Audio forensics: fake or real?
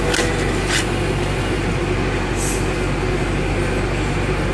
real